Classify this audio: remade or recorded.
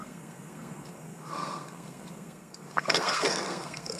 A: remade